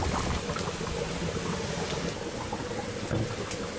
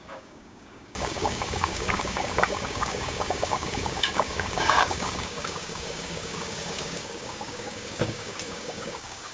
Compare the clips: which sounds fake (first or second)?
second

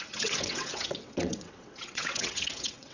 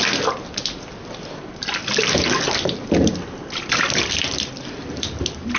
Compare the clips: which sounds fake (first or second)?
first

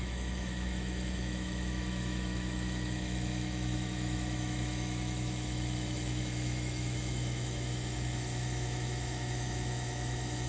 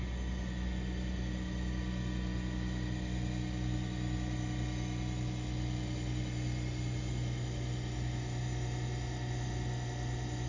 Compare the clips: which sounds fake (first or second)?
first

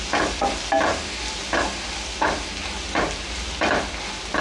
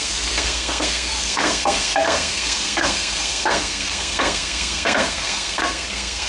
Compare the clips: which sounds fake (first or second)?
second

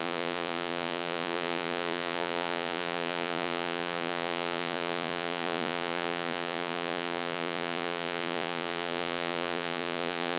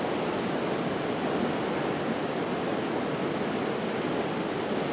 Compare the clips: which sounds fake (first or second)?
first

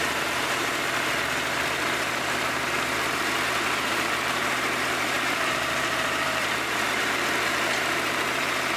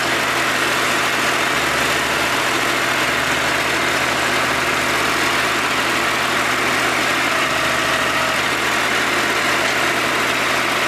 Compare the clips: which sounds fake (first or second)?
first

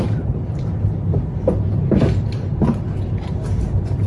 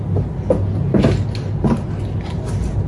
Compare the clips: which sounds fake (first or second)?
first